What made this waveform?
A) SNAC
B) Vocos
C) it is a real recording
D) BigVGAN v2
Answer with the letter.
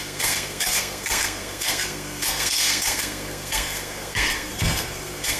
A